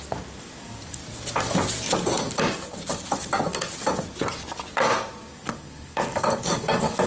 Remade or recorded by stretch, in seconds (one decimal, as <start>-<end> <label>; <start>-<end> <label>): 0.0-1.0 remade; 1.0-5.3 recorded; 5.3-7.1 remade